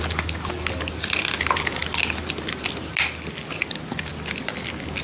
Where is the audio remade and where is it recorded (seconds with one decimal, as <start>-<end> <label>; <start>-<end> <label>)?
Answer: 0.0-5.0 recorded